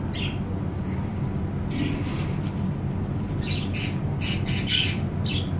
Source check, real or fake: real